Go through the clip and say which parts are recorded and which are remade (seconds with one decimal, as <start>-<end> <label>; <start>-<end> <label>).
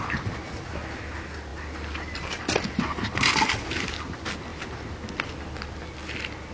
0.0-6.5 recorded